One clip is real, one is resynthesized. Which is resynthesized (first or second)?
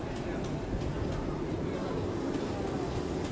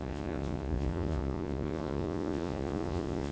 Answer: second